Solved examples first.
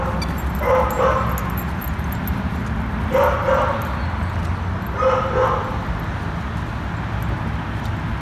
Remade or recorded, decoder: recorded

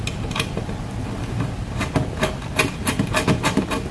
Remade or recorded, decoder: recorded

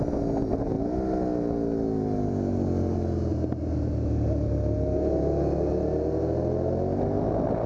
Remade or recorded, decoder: recorded